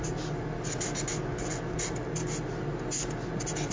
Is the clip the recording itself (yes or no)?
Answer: yes